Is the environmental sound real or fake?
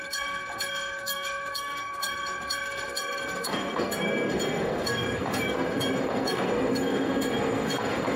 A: fake